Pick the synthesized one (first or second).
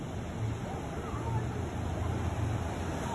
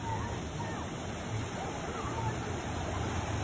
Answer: second